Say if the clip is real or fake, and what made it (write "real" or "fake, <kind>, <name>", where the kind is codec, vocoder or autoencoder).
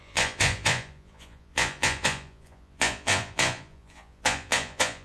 fake, vocoder, Vocos